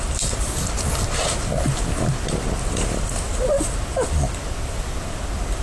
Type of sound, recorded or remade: recorded